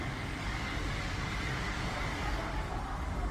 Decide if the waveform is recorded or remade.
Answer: remade